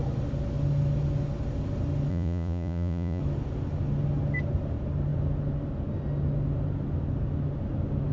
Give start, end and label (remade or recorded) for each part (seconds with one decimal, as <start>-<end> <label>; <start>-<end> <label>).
0.0-2.1 recorded; 2.1-3.2 remade; 3.2-8.1 recorded